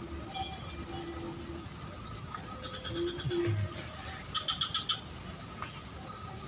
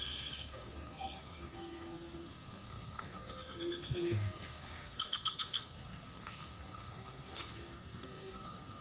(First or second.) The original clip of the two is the first